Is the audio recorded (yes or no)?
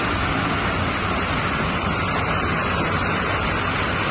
yes